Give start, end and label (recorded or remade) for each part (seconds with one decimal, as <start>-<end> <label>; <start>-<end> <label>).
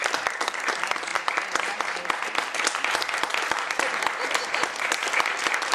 0.0-1.1 recorded; 1.1-1.8 remade; 1.8-5.7 recorded